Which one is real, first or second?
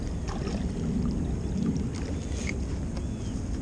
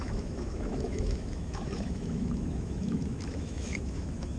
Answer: first